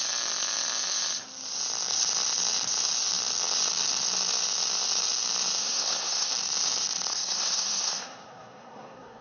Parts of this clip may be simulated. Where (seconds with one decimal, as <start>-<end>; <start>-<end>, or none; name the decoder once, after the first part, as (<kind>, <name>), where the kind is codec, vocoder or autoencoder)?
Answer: 5.6-6.3 (codec, SNAC); 7.1-9.2